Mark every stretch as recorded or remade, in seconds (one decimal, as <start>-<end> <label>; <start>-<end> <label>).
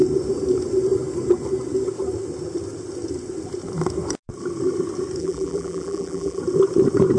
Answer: 0.0-5.2 recorded; 5.2-6.4 remade; 6.4-7.2 recorded